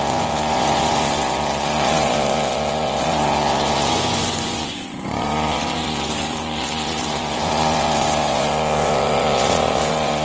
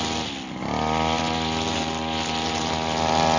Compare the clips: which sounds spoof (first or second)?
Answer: first